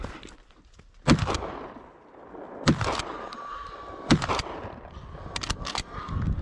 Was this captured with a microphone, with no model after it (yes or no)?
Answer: yes